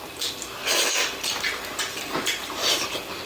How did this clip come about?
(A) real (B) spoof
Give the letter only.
A